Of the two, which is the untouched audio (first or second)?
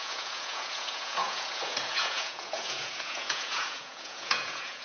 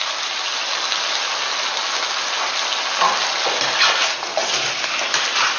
second